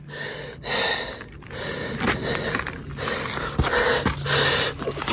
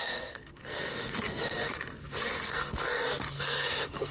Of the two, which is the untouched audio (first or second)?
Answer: first